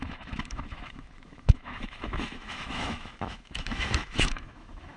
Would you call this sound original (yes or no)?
no